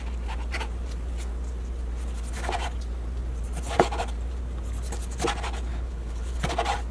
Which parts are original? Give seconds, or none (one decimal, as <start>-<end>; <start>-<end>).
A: 0.0-5.7; 6.4-6.9